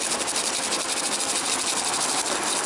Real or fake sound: real